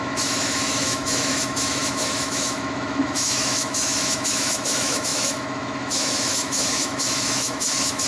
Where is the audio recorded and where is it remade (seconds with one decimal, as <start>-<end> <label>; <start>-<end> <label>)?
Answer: 0.0-8.1 remade